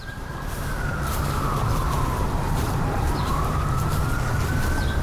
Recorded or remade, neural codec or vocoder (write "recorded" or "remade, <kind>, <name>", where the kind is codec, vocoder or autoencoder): remade, vocoder, BigVGAN v2